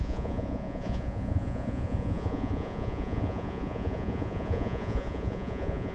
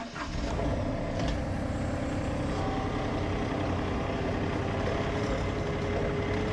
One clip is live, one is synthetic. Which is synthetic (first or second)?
first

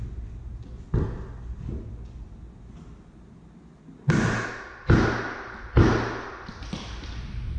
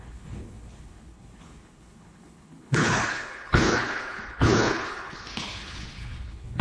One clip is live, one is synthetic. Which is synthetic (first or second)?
second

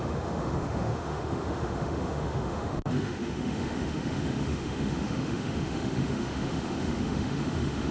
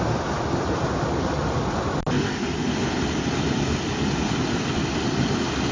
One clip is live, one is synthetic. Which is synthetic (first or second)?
first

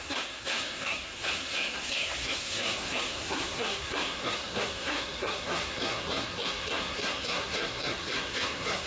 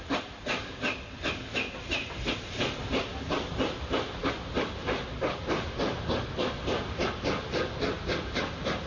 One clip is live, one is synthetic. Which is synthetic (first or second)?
first